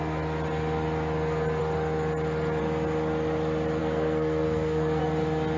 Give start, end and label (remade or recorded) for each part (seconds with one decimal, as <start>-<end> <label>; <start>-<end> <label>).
0.0-3.8 recorded; 3.8-5.0 remade; 5.0-5.6 recorded